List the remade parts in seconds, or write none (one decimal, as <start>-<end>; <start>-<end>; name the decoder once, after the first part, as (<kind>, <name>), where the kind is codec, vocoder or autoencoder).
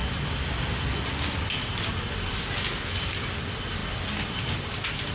none